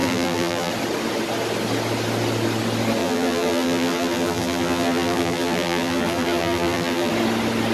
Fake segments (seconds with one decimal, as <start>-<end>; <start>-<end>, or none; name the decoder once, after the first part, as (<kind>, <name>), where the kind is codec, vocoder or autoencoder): 0.0-0.7 (vocoder, BigVGAN v2); 3.0-7.1